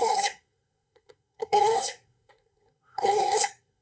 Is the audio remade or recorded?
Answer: remade